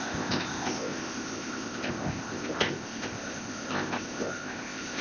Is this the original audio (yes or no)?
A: no